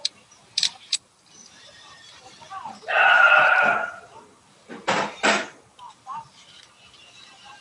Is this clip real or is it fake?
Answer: fake